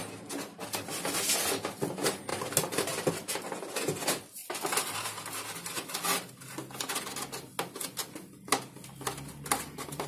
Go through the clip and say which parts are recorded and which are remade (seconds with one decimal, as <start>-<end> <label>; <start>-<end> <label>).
0.0-10.1 recorded